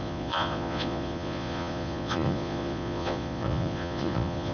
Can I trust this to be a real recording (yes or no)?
no